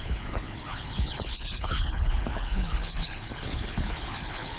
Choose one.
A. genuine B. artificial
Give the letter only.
B